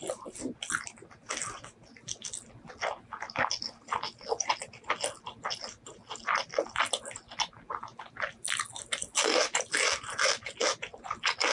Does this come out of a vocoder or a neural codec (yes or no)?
no